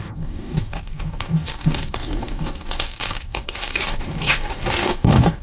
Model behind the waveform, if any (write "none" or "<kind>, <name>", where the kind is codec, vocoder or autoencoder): codec, DAC